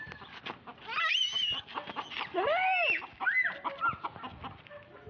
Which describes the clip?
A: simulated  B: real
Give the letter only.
B